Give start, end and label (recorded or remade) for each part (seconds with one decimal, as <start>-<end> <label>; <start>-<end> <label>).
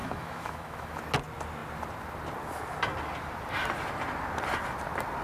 0.0-1.0 remade; 1.0-5.2 recorded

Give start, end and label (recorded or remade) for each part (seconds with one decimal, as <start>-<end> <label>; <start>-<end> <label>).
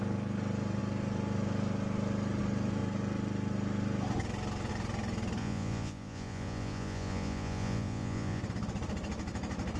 0.0-5.4 recorded; 5.4-8.4 remade; 8.4-9.8 recorded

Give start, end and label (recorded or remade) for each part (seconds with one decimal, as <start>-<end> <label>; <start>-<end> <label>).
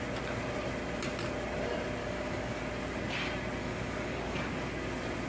0.0-2.0 recorded; 2.0-2.6 remade; 2.6-3.6 recorded; 3.6-4.5 remade; 4.5-5.3 recorded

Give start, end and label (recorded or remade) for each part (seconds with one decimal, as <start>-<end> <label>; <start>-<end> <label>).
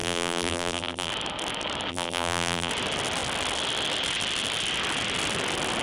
0.0-1.1 remade; 1.1-1.9 recorded; 1.9-2.7 remade; 2.7-5.8 recorded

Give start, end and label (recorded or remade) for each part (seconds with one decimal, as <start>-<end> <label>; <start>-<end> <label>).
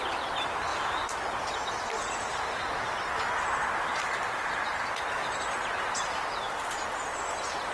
0.0-7.7 recorded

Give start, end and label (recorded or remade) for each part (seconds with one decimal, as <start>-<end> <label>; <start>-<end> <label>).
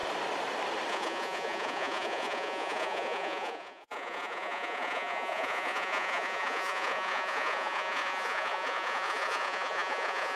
0.0-0.9 recorded; 0.9-10.4 remade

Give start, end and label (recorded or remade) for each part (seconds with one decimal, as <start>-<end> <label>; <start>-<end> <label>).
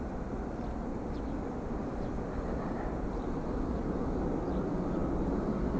0.0-0.9 recorded; 0.9-4.4 remade; 4.4-5.8 recorded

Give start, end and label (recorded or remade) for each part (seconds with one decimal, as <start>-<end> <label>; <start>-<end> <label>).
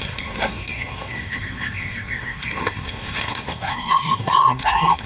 0.0-5.1 remade